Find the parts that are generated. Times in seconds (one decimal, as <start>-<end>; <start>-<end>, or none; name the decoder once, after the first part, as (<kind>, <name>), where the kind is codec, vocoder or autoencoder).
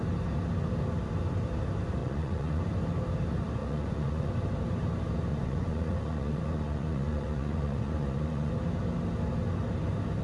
2.0-2.6 (vocoder, Vocos); 3.6-4.3; 5.3-8.5